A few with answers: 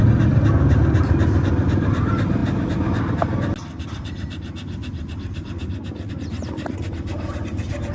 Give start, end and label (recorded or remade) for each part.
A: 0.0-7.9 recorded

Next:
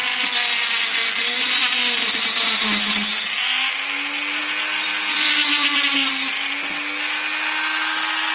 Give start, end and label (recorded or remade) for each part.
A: 0.0-8.3 recorded

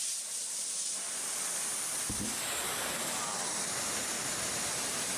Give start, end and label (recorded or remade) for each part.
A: 0.0-5.2 recorded

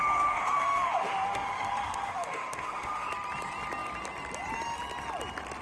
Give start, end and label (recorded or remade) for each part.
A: 0.0-3.1 remade; 3.1-5.6 recorded

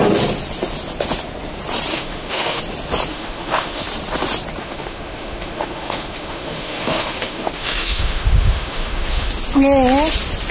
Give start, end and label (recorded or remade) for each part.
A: 0.0-1.9 recorded; 1.9-2.6 remade; 2.6-3.1 recorded; 3.1-3.8 remade; 3.8-4.6 recorded; 4.6-9.3 remade; 9.3-10.5 recorded

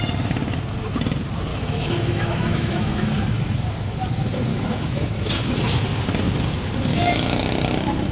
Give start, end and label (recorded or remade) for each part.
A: 0.0-1.5 recorded; 1.5-3.1 remade; 3.1-4.5 recorded; 4.5-5.3 remade; 5.3-6.9 recorded; 6.9-7.4 remade; 7.4-8.1 recorded

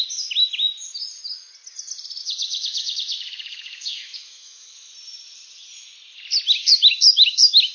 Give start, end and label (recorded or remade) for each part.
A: 0.0-2.2 recorded; 2.2-4.9 remade; 4.9-6.6 recorded; 6.6-7.7 remade

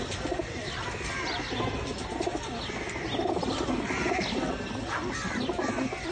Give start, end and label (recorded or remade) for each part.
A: 0.0-6.1 recorded